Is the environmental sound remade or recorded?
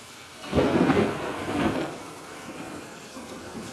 remade